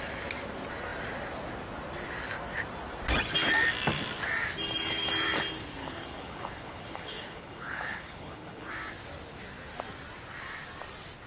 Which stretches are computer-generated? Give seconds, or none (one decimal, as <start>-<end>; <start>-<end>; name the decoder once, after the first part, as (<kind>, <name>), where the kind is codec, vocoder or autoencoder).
5.8-8.7 (codec, HILCodec)